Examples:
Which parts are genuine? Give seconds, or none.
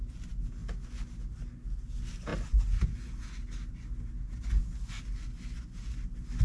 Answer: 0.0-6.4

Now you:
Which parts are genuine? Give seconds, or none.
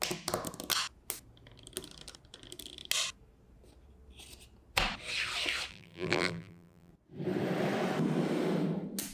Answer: 0.0-5.7; 6.9-9.1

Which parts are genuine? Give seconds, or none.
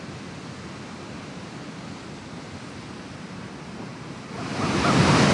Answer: 0.0-5.3